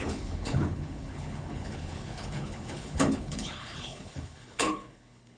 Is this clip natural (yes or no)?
no